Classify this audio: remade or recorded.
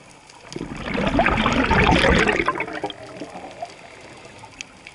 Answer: recorded